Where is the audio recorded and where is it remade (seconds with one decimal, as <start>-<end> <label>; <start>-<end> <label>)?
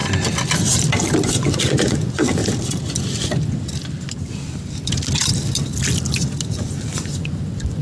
0.0-1.3 recorded; 1.3-2.4 remade; 2.4-6.5 recorded; 6.5-7.8 remade